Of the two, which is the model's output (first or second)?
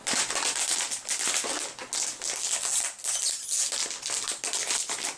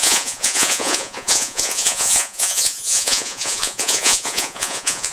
second